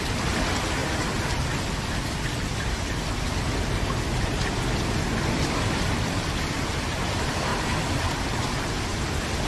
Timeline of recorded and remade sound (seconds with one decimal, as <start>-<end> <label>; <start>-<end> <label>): 0.0-9.5 recorded